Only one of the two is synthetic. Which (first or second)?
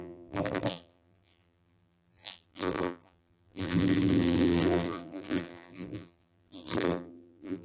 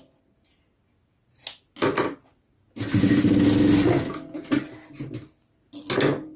first